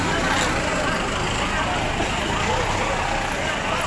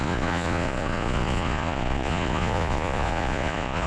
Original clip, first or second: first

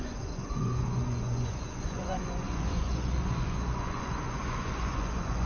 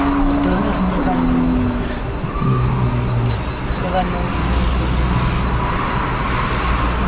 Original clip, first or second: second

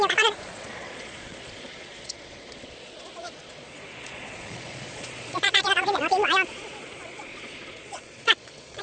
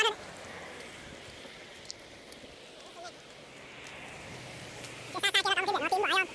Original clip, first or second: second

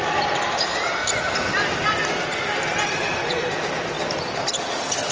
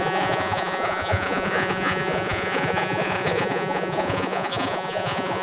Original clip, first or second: first